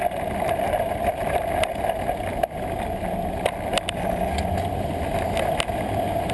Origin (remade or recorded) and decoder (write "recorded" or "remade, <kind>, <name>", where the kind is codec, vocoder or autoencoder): recorded